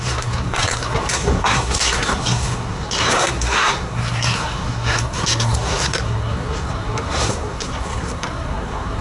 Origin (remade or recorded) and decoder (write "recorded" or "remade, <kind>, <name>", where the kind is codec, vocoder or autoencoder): remade, codec, SNAC